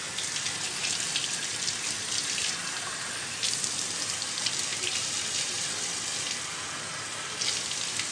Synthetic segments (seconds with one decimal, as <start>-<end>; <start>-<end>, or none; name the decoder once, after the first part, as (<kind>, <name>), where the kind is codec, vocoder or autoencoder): 1.5-3.0 (vocoder, BigVGAN v2); 4.7-5.6